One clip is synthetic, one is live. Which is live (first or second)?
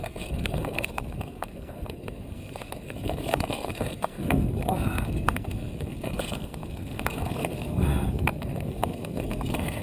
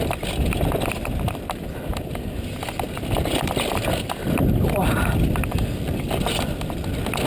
second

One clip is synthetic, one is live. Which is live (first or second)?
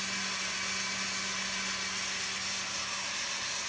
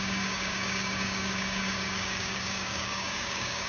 first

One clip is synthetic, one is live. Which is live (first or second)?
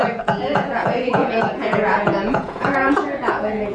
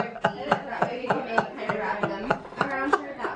second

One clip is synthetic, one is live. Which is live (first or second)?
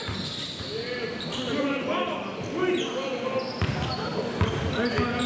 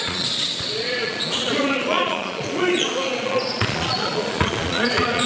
first